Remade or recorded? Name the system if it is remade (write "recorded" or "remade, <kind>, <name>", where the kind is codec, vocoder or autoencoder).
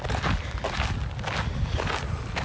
recorded